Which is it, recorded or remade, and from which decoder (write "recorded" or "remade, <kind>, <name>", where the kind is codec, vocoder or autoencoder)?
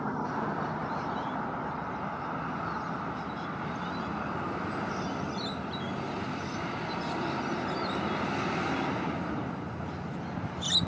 recorded